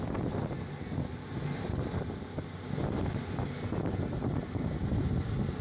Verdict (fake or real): real